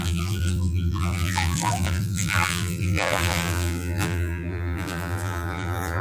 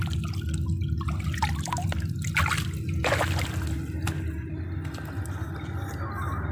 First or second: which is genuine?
second